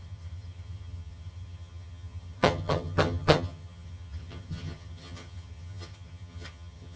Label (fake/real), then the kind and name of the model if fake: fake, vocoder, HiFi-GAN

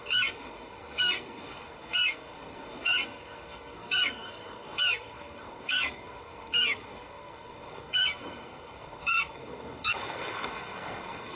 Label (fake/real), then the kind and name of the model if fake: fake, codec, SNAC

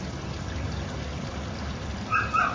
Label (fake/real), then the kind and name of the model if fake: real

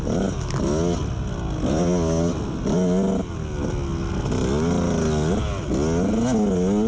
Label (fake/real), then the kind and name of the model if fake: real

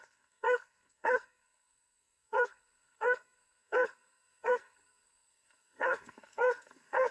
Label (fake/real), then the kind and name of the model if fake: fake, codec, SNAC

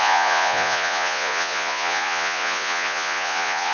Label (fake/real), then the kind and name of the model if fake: fake, vocoder, Vocos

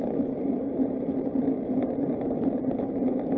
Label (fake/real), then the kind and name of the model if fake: real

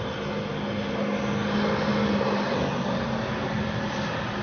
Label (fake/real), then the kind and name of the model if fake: real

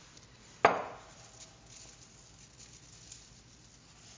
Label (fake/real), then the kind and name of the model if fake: real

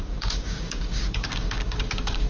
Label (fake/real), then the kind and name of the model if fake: fake, codec, DAC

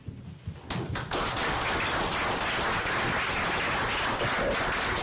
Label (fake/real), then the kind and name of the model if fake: real